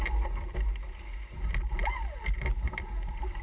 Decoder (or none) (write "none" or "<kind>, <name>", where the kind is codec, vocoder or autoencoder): none